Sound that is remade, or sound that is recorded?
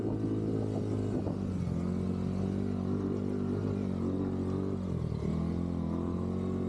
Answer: recorded